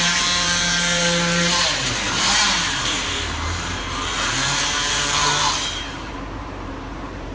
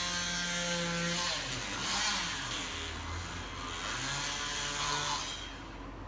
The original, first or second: second